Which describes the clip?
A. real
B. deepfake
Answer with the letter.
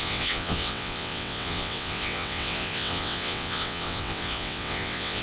B